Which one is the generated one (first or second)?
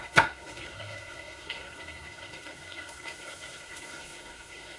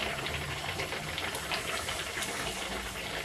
first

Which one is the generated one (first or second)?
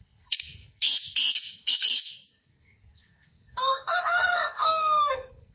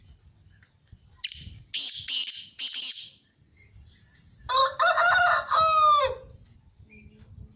first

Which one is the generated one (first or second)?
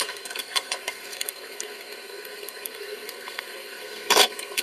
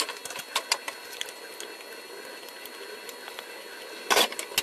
first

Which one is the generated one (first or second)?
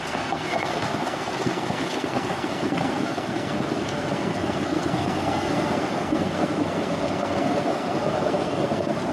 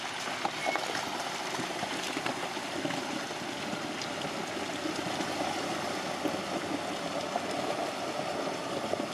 first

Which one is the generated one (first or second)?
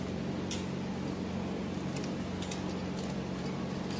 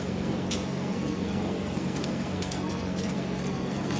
second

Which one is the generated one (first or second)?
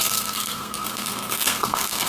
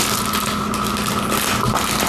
first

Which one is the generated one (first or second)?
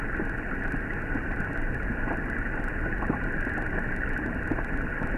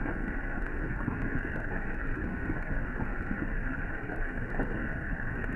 second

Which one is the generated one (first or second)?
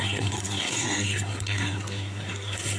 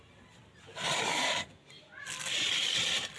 first